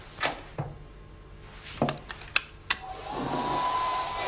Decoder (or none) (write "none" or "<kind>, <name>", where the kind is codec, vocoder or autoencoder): none